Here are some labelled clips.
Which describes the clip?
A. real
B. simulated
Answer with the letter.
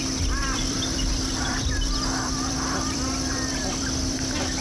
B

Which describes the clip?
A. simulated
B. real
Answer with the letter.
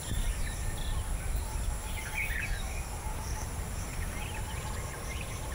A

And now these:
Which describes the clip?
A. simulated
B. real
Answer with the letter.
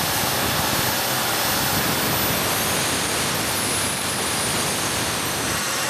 B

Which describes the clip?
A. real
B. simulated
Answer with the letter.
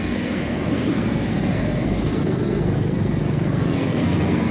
B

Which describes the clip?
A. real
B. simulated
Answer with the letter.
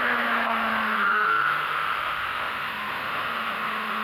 B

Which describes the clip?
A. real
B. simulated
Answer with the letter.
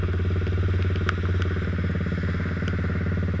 A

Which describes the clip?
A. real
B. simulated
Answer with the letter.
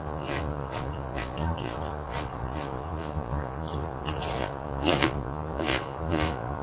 B